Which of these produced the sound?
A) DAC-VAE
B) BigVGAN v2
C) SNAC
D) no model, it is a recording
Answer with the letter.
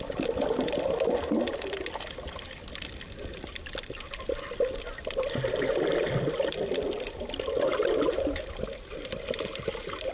D